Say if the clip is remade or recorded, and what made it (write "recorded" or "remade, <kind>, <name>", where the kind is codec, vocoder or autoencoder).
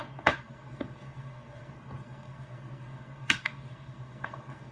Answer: remade, codec, SNAC